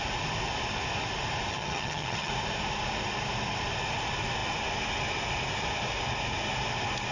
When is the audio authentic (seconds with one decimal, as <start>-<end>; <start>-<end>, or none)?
0.0-1.5; 2.3-7.1